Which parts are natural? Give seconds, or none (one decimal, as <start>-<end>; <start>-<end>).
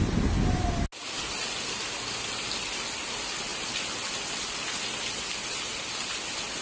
0.0-6.6